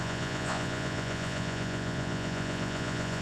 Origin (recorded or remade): remade